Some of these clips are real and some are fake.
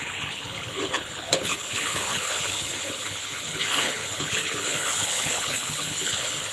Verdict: fake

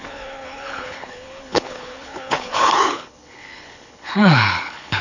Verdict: fake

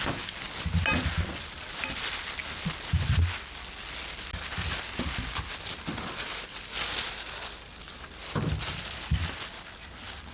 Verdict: real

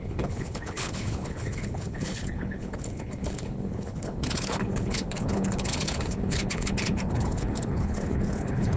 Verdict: fake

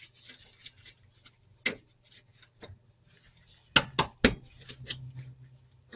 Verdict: real